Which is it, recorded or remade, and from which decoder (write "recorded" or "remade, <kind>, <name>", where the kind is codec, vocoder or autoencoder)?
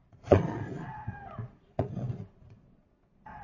remade, vocoder, Vocos